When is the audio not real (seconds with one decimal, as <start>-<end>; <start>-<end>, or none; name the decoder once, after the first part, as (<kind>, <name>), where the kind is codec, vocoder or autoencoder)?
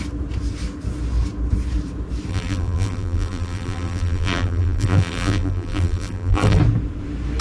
2.3-6.6 (vocoder, BigVGAN v2)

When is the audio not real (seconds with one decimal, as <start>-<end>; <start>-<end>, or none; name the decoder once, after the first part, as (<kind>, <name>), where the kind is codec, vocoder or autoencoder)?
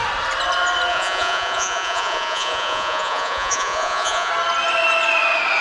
0.9-4.3 (vocoder, Vocos)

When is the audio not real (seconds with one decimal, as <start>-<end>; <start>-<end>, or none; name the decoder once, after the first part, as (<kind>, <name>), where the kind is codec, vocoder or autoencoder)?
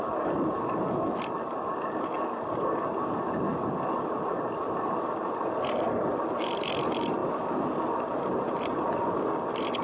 none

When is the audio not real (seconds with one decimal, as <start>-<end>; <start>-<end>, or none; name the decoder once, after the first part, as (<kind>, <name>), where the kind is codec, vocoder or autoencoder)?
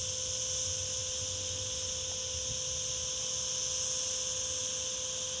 none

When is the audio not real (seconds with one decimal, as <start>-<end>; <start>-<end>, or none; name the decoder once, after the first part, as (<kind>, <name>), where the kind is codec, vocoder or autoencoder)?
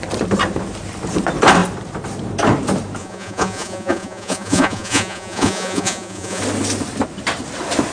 3.0-6.4 (vocoder, Vocos)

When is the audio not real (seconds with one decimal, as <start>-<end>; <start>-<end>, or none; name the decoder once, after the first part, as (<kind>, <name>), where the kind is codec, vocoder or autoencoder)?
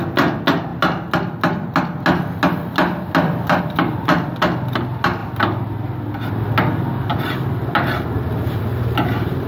none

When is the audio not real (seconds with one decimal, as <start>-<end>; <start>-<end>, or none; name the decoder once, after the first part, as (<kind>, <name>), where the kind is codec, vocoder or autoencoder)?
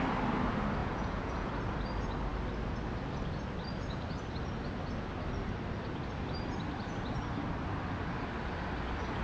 0.8-1.5 (vocoder, Vocos)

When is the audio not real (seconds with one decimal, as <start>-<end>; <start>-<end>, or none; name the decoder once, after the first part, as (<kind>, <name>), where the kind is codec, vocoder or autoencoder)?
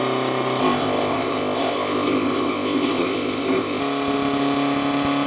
0.6-3.8 (codec, ZipCodec)